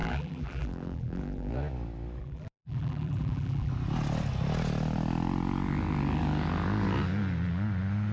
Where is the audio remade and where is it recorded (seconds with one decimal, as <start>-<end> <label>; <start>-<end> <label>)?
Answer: 0.0-1.5 remade; 1.5-2.2 recorded; 2.2-3.7 remade; 3.7-8.1 recorded